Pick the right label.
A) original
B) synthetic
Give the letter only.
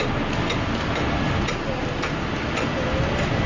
A